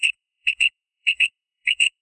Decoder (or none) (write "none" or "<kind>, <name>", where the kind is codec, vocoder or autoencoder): codec, SNAC